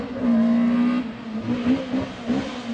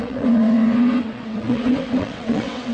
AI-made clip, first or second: second